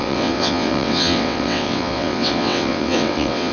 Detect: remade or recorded remade